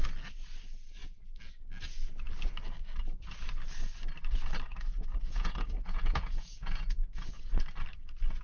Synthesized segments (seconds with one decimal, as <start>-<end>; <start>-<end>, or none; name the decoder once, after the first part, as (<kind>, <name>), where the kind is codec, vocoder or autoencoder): 4.7-7.4 (vocoder, Vocos)